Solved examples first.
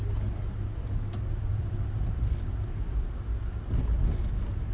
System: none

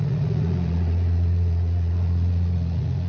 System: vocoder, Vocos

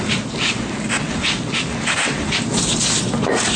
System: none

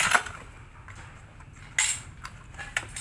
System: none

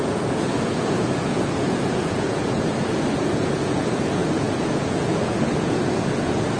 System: vocoder, Vocos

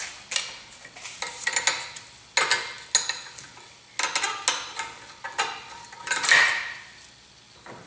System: none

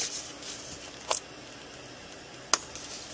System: none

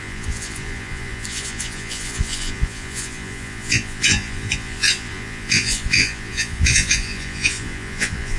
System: vocoder, Vocos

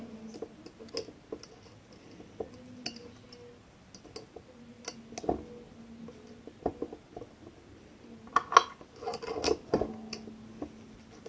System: none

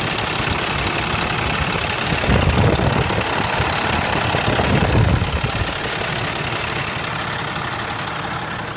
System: none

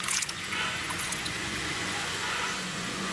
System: vocoder, Vocos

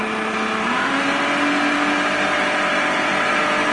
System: none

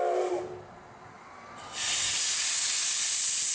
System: none